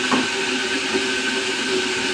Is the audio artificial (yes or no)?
no